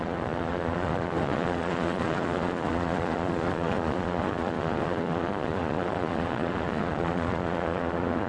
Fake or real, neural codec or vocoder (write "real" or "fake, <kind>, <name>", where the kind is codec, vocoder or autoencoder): fake, vocoder, Vocos